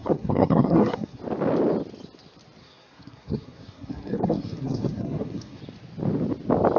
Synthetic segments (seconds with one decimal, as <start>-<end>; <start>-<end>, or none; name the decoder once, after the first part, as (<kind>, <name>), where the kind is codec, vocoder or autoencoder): 0.0-1.2 (codec, SNAC); 2.6-5.6